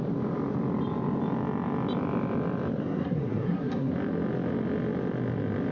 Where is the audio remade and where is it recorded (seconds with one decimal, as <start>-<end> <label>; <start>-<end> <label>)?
0.0-2.8 recorded; 2.8-3.9 remade; 3.9-5.7 recorded